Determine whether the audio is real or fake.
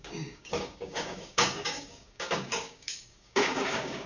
fake